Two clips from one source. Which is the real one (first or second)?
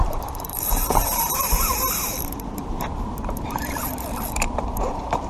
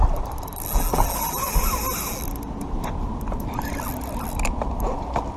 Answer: second